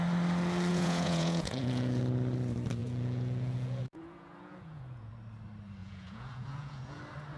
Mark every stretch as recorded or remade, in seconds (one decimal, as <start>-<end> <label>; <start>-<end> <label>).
0.0-0.7 recorded; 0.7-2.0 remade; 2.0-2.8 recorded; 2.8-5.1 remade; 5.1-5.8 recorded; 5.8-7.0 remade; 7.0-7.4 recorded